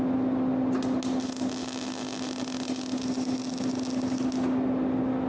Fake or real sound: real